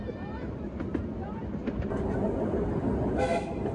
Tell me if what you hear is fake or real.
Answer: real